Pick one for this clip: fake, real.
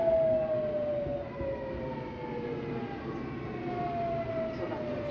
real